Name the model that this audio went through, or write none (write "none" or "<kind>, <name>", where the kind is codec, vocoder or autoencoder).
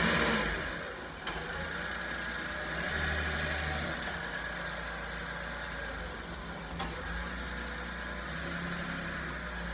none